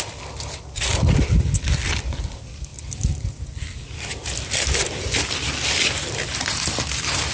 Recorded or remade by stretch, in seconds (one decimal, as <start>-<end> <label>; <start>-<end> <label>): 0.0-7.3 recorded